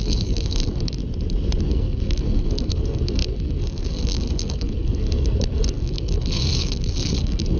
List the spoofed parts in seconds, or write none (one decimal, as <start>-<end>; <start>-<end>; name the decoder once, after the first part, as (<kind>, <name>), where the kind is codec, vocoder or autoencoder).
0.0-1.0 (codec, SNAC); 1.6-7.6

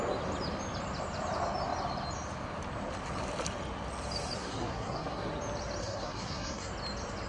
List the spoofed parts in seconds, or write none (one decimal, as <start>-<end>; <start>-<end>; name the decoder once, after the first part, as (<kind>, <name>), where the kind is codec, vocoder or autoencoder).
4.4-5.3 (codec, SNAC); 5.8-6.7

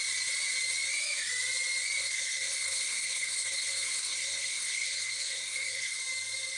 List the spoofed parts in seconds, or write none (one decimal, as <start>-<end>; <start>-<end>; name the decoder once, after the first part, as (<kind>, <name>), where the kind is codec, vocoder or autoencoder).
2.0-6.0 (codec, SNAC)

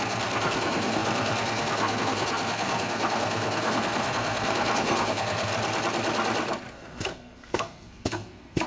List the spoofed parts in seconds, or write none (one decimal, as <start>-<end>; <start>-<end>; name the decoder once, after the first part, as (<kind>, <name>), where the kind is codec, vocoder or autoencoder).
0.0-5.5 (codec, SNAC); 6.7-8.7

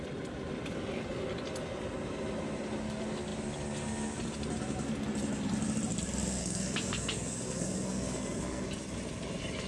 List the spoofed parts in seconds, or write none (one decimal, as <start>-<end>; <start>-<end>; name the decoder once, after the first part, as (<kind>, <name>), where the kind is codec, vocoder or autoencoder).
6.4-8.6 (codec, SNAC)

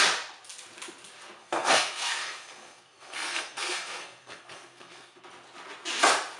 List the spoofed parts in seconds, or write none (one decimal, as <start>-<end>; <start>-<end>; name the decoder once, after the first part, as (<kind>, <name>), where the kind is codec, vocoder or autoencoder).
1.4-5.2 (codec, SNAC)